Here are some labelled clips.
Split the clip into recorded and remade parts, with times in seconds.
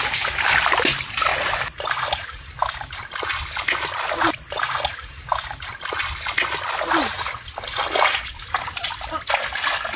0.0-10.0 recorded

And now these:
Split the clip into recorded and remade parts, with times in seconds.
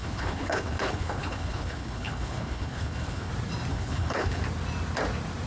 0.0-3.3 remade; 3.3-3.7 recorded; 3.7-4.4 remade; 4.4-5.5 recorded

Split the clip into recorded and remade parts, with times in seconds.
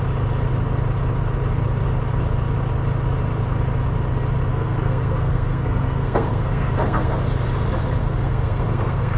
0.0-4.5 recorded; 4.5-7.2 remade; 7.2-8.0 recorded; 8.0-9.2 remade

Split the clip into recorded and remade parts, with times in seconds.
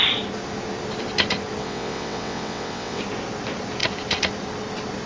0.0-1.6 recorded; 1.6-3.0 remade; 3.0-5.1 recorded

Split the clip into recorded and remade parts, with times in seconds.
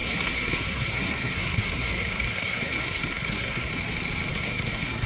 0.0-3.7 remade; 3.7-4.3 recorded; 4.3-5.1 remade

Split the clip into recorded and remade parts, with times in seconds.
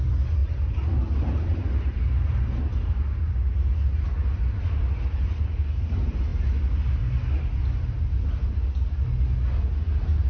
0.0-10.3 recorded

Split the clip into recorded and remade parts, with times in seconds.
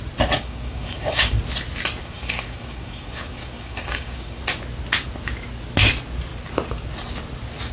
0.0-0.4 recorded; 0.4-1.3 remade; 1.3-2.0 recorded; 2.0-4.4 remade; 4.4-7.7 recorded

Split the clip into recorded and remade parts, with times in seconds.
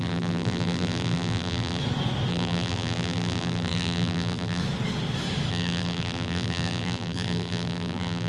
0.0-1.8 remade; 1.8-2.3 recorded; 2.3-4.6 remade; 4.6-5.5 recorded; 5.5-8.3 remade